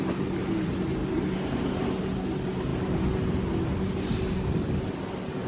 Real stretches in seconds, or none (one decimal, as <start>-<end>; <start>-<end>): 0.0-5.5

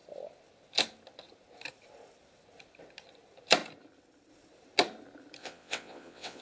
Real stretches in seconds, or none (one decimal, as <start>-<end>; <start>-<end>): 0.0-5.4

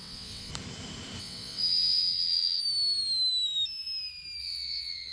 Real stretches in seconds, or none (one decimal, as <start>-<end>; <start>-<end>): 0.5-1.2; 2.6-4.4